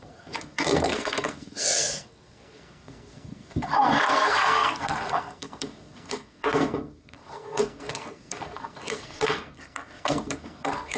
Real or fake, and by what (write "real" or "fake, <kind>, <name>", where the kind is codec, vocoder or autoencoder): fake, codec, SNAC